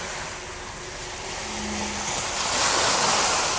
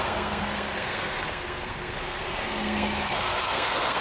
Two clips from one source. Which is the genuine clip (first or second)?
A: first